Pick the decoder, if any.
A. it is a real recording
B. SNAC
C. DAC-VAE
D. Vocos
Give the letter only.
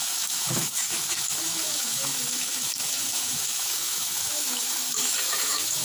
C